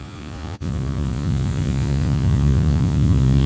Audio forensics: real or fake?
fake